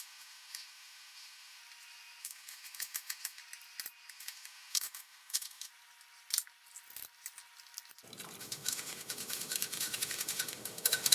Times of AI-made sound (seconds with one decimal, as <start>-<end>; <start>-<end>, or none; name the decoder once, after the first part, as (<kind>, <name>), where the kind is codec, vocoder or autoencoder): 0.0-1.6 (autoencoder, DAC-VAE); 2.2-3.4; 4.1-5.7; 8.4-11.1